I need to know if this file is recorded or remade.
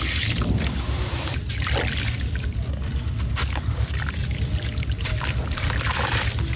recorded